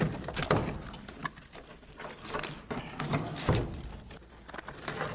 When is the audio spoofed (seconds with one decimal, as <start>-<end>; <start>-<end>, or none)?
none